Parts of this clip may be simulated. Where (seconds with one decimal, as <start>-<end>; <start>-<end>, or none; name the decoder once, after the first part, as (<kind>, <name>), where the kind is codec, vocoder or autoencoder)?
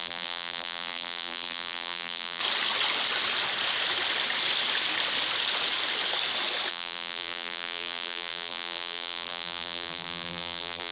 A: 0.0-2.4 (vocoder, BigVGAN v2); 6.7-10.9